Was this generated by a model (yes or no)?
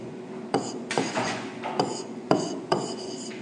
yes